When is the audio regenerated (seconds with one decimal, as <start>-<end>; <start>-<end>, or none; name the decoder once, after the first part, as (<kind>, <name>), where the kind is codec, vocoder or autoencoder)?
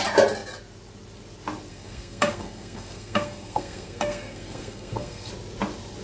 1.7-5.3 (codec, SNAC)